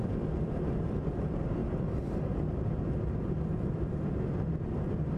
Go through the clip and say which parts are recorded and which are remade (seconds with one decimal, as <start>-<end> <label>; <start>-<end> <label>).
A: 0.0-5.2 recorded